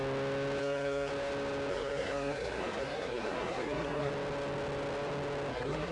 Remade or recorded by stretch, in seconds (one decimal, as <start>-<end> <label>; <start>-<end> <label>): 0.0-0.6 recorded; 0.6-1.1 remade; 1.1-1.7 recorded; 1.7-4.1 remade; 4.1-5.5 recorded; 5.5-5.9 remade